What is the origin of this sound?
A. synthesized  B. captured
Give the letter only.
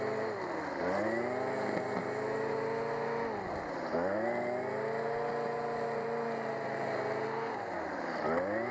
B